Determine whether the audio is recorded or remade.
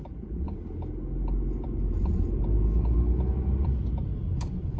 recorded